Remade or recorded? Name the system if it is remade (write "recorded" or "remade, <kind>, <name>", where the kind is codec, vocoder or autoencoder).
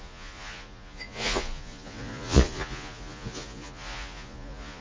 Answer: remade, vocoder, Vocos